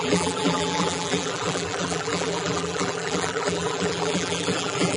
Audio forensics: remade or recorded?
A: remade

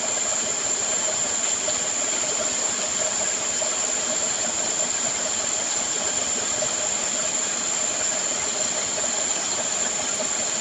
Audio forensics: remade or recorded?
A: recorded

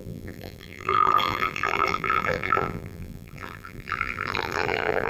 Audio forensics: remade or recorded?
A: remade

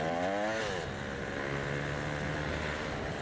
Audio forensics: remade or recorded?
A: recorded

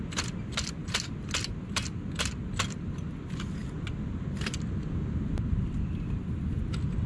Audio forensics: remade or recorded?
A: recorded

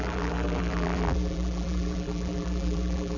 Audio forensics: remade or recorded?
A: remade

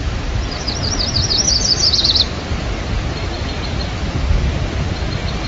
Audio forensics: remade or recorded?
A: remade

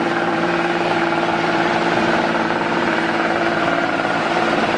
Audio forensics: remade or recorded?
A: remade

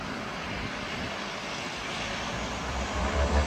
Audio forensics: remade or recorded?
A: remade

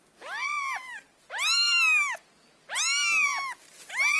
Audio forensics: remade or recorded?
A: recorded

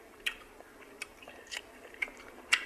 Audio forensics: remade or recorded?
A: remade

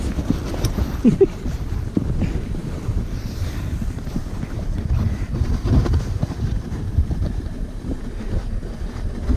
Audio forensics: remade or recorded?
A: recorded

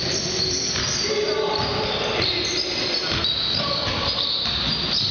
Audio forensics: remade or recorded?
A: recorded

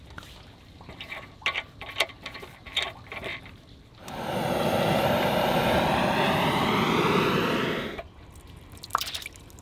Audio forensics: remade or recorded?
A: recorded